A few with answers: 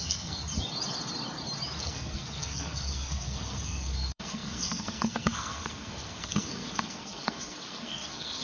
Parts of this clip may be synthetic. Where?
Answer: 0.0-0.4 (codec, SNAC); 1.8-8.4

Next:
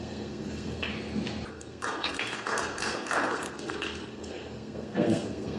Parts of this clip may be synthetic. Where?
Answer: 0.0-0.9 (codec, SNAC); 1.5-5.6